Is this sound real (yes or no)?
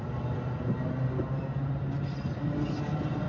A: yes